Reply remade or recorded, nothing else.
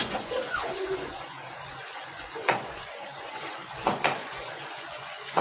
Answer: remade